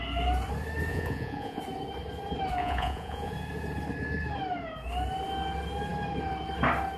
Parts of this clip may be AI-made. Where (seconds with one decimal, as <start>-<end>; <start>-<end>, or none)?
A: 0.9-1.6; 2.6-3.3